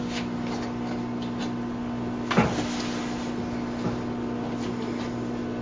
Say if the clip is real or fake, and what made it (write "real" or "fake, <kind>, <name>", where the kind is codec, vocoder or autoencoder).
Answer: real